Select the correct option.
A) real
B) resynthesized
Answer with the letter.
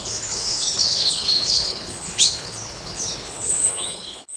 B